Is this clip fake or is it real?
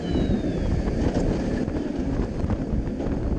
real